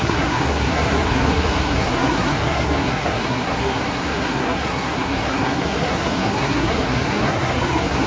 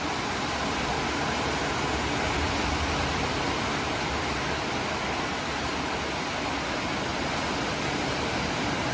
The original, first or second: second